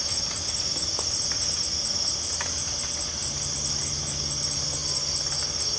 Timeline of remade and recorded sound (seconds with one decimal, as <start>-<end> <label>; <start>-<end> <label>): 0.0-5.8 recorded

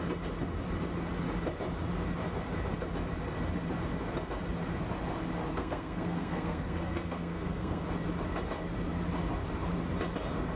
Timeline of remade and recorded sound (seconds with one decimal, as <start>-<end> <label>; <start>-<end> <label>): 0.0-5.5 recorded; 5.5-7.8 remade; 7.8-10.6 recorded

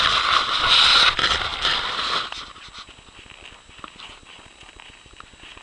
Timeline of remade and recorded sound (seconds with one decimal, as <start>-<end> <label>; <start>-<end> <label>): 0.0-5.6 recorded

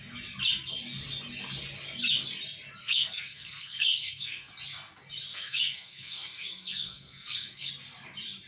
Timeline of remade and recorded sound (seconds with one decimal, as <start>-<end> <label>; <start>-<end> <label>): 0.0-2.8 recorded; 2.8-4.5 remade; 4.5-5.3 recorded; 5.3-7.7 remade; 7.7-8.5 recorded

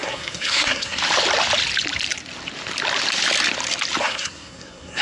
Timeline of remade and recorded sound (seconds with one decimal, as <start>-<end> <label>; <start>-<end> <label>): 0.0-1.0 remade; 1.0-4.0 recorded; 4.0-5.0 remade

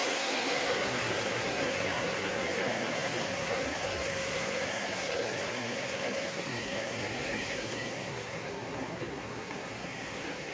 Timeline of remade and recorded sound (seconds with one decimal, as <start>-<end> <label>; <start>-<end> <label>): 0.0-10.5 remade

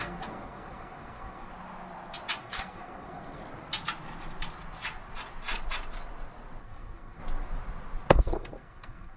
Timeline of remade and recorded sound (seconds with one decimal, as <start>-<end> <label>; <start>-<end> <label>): 0.0-1.5 remade; 1.5-2.4 recorded; 2.4-3.4 remade; 3.4-6.6 recorded; 6.6-7.2 remade; 7.2-8.1 recorded; 8.1-9.2 remade

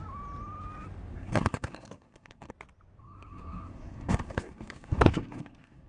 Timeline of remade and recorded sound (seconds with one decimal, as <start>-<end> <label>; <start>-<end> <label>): 0.0-1.1 recorded; 1.1-2.5 remade; 2.5-3.0 recorded; 3.0-5.9 remade